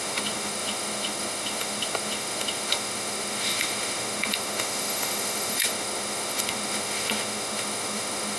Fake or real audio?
fake